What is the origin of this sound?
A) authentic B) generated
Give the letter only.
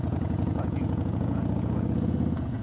B